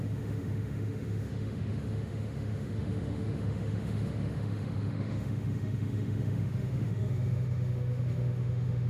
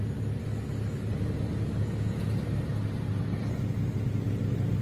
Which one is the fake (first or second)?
first